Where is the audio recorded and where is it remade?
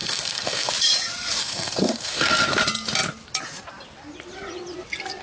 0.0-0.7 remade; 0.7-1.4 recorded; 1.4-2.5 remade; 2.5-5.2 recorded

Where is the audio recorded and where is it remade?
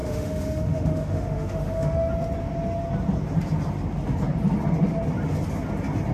0.0-2.1 remade; 2.1-6.1 recorded